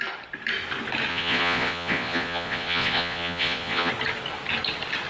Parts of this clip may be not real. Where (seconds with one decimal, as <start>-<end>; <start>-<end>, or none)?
1.1-3.9